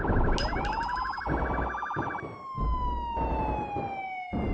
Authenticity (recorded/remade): recorded